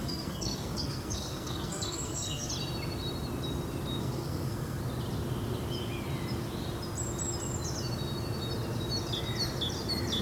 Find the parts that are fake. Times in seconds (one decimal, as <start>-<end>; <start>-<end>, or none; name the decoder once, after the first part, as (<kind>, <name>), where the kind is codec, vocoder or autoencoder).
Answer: 0.0-2.5 (codec, SNAC); 4.0-4.8

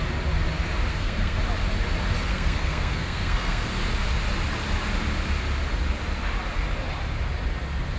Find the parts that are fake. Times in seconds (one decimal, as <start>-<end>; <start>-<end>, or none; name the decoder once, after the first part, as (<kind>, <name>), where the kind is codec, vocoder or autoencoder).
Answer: 0.9-1.4 (codec, SNAC); 2.3-3.7

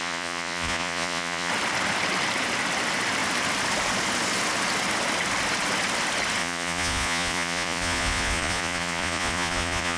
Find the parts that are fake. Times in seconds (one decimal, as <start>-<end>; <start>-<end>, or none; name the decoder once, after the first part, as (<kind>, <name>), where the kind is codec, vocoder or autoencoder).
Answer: 0.0-1.5 (vocoder, Vocos); 6.4-10.0